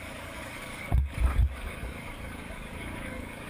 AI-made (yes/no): yes